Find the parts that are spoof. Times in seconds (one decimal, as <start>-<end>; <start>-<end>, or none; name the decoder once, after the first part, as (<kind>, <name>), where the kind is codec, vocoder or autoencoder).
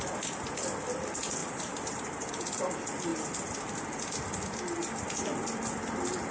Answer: 1.4-2.3 (vocoder, BigVGAN v2)